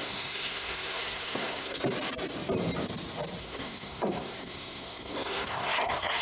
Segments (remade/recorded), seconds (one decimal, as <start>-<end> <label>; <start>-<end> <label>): 0.0-1.8 remade; 1.8-3.4 recorded; 3.4-6.2 remade